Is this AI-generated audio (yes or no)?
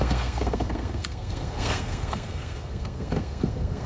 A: yes